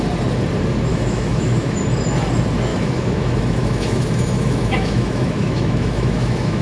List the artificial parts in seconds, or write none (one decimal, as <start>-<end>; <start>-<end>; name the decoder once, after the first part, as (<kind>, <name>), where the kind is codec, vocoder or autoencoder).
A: 0.9-1.8 (autoencoder, DAC-VAE); 2.7-6.6